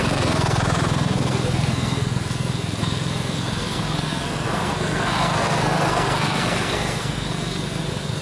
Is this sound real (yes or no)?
no